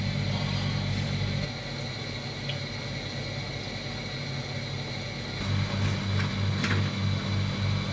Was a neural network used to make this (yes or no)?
no